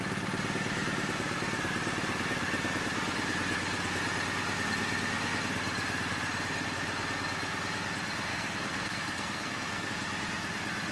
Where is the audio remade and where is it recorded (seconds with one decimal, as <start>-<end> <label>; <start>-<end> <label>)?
0.0-8.3 recorded; 8.3-9.9 remade; 9.9-10.9 recorded